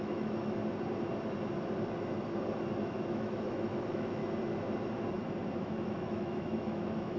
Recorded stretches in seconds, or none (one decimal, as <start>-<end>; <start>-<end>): 0.6-3.1; 4.2-5.6